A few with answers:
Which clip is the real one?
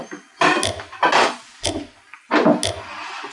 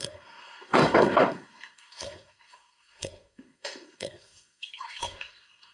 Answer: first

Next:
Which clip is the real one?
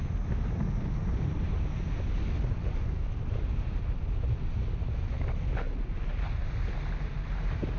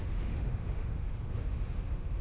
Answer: first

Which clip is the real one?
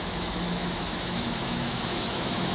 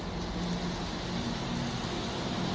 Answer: second